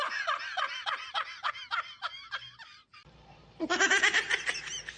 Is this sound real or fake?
fake